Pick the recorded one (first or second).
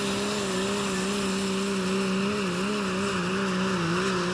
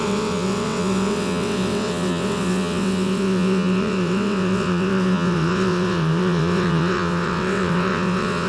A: first